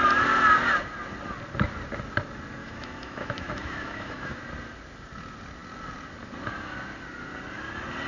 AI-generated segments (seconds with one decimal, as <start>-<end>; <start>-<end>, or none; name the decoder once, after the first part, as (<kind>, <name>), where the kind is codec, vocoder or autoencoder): 2.6-4.4 (autoencoder, DAC-VAE)